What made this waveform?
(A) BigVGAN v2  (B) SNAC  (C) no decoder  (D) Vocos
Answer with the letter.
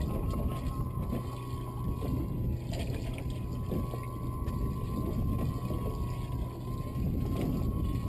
C